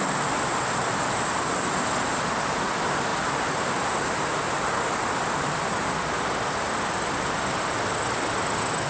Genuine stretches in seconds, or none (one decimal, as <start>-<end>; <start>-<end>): 0.0-8.9